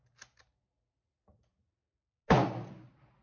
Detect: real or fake real